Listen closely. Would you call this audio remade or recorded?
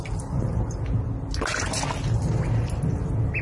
recorded